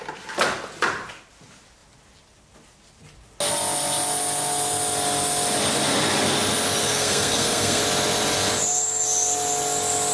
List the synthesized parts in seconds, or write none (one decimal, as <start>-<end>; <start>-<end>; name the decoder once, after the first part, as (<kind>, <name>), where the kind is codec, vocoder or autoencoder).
6.8-7.8 (codec, SNAC)